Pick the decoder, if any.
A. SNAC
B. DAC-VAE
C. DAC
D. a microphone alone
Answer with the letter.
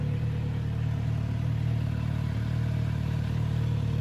D